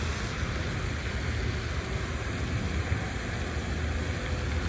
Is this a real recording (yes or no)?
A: yes